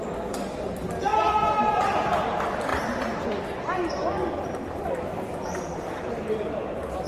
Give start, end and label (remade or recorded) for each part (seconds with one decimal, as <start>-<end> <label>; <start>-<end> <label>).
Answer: 0.0-7.1 recorded